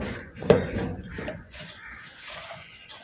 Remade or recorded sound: remade